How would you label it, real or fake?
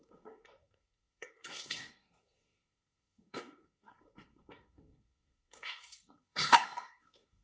fake